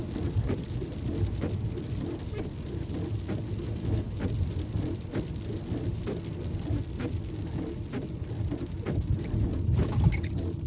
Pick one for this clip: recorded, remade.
recorded